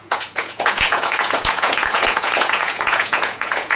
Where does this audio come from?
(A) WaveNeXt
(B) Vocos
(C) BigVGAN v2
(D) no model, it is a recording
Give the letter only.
B